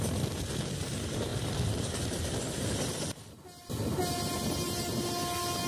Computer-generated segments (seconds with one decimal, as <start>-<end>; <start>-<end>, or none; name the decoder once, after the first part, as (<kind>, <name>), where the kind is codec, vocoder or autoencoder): none